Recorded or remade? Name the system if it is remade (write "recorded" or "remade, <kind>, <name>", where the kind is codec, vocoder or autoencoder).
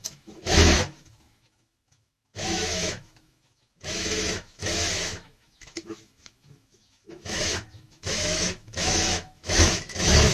remade, autoencoder, DAC-VAE